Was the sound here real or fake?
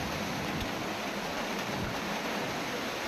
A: real